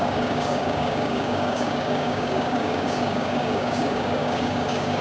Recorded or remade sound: remade